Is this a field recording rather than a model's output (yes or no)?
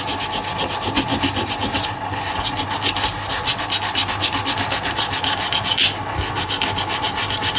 yes